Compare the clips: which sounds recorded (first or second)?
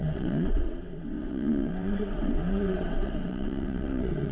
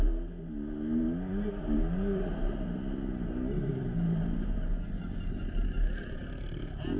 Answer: second